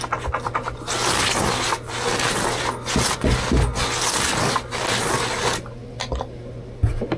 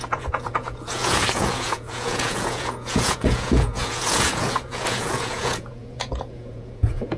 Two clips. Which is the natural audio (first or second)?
first